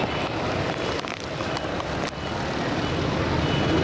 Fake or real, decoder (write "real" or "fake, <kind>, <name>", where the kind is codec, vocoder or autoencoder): real